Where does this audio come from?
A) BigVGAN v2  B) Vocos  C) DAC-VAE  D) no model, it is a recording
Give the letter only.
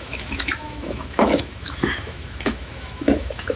C